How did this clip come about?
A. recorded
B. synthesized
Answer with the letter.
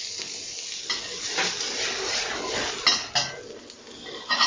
A